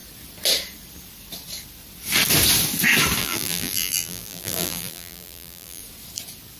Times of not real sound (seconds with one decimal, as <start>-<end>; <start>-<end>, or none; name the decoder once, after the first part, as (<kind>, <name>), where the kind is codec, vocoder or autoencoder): 3.2-5.8 (vocoder, BigVGAN v2)